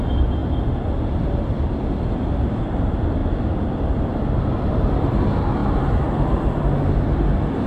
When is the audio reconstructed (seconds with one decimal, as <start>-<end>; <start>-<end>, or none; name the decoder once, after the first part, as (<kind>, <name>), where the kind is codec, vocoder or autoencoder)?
0.0-0.4 (vocoder, BigVGAN v2); 2.8-3.2; 3.9-5.6; 6.8-7.7